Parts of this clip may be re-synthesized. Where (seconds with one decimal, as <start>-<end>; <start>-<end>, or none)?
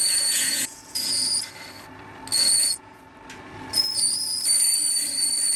0.0-1.3; 2.3-3.0